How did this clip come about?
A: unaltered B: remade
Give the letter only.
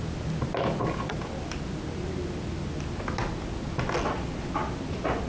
A